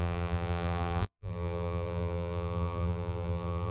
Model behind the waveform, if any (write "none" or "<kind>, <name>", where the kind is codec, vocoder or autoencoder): vocoder, BigVGAN v2